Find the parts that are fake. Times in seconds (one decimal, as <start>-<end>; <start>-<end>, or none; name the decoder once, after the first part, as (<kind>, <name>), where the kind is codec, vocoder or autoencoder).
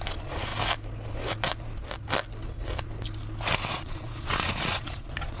0.0-0.5 (vocoder, Vocos); 3.7-5.4